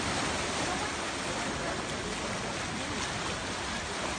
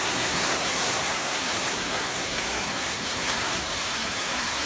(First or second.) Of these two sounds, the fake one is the second